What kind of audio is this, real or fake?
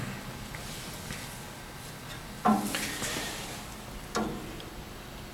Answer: real